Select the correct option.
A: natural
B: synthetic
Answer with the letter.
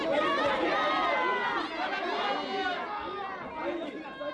A